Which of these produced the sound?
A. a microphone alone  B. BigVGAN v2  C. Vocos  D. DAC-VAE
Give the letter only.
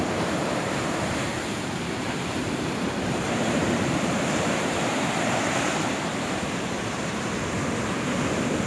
B